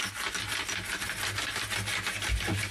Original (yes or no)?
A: yes